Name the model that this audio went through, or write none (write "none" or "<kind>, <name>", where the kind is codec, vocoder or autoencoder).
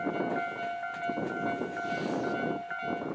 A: none